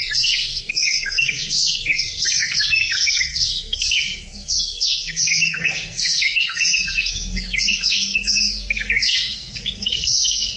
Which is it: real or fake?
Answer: fake